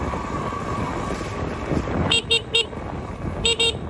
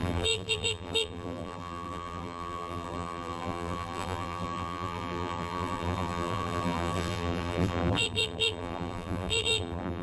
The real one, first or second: first